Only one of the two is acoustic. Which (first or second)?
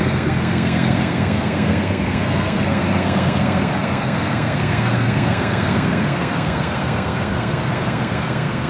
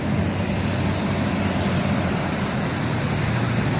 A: second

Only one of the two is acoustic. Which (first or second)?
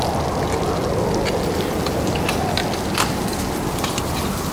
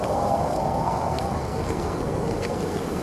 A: first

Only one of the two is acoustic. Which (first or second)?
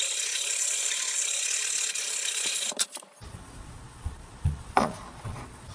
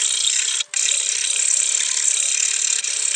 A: second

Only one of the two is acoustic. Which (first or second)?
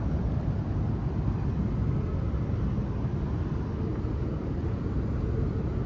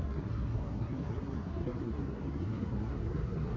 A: first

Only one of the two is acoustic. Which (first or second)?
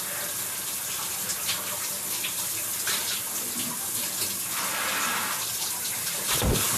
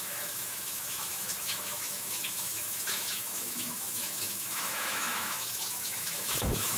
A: first